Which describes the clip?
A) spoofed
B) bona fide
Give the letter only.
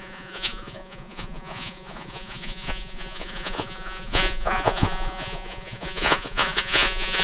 A